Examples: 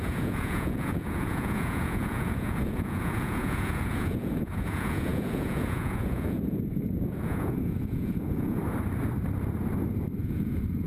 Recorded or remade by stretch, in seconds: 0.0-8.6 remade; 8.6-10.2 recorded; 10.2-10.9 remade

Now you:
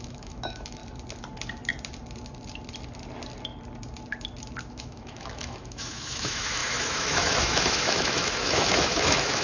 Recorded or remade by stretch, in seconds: 0.0-0.8 remade; 0.8-4.7 recorded; 4.7-9.4 remade

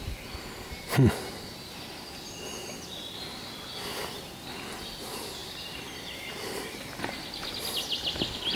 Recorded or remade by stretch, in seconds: 0.0-5.4 recorded; 5.4-7.5 remade; 7.5-8.6 recorded

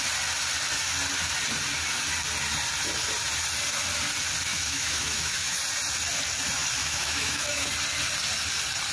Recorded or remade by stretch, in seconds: 0.0-4.5 recorded; 4.5-5.6 remade; 5.6-6.8 recorded; 6.8-7.7 remade; 7.7-8.9 recorded

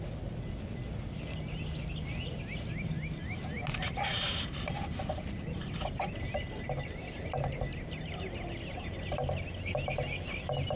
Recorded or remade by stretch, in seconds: 0.0-4.1 recorded; 4.1-4.8 remade; 4.8-10.8 recorded

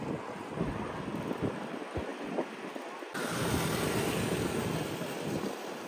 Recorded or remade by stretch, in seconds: 0.0-5.9 recorded